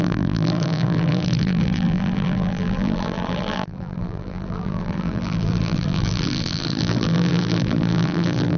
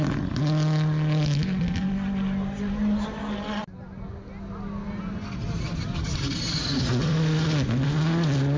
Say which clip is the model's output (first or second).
first